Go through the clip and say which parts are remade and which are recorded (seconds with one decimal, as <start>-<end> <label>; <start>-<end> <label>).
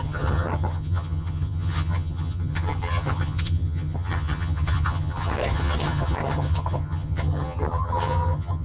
0.0-8.6 remade